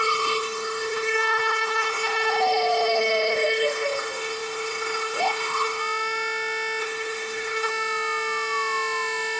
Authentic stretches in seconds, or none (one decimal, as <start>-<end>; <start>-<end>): 5.8-6.8; 7.7-9.4